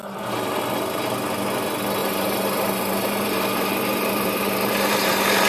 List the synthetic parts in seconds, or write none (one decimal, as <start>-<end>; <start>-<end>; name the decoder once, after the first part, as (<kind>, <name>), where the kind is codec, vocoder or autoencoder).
0.0-0.6 (vocoder, BigVGAN v2); 2.0-5.5